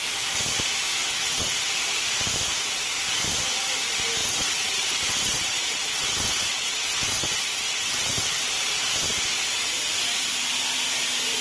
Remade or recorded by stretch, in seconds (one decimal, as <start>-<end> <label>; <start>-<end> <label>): 0.0-1.0 recorded; 1.0-1.7 remade; 1.7-4.2 recorded; 4.2-8.5 remade; 8.5-11.4 recorded